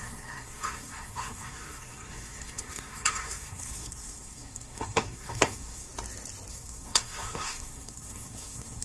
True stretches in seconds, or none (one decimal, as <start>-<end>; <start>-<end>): 5.9-6.5